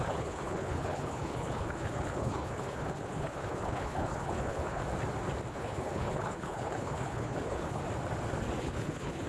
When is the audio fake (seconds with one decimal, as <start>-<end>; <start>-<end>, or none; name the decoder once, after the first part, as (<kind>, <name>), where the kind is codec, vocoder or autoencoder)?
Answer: 0.0-4.8 (codec, HILCodec); 5.5-7.8; 8.6-9.3